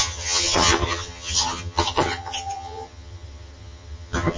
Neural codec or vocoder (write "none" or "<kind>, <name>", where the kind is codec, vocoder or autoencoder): vocoder, HiFi-GAN